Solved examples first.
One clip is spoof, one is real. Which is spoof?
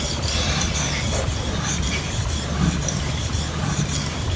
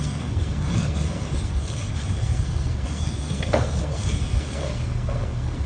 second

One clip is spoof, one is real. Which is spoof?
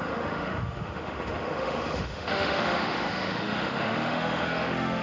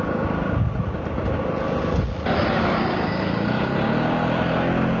first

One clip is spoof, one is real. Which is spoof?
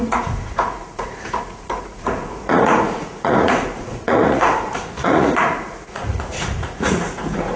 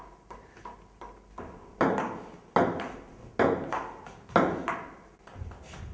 first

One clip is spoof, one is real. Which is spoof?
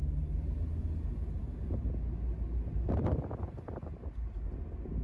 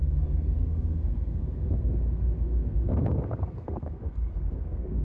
second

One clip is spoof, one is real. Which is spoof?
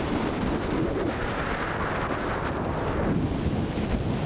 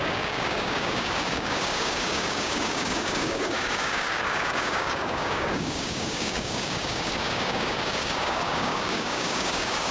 second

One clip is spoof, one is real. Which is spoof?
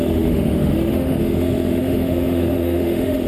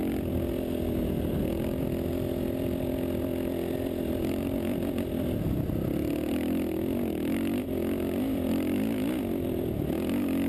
first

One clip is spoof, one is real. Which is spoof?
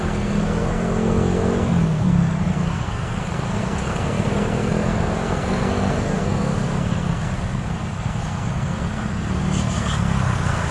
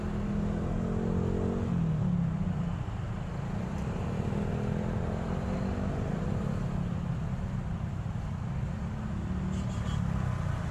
first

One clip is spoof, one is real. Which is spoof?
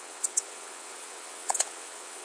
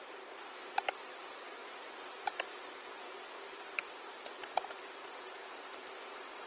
first